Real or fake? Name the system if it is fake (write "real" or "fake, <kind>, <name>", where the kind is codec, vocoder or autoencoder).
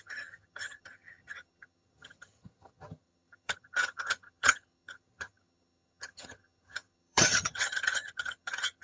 fake, vocoder, HiFi-GAN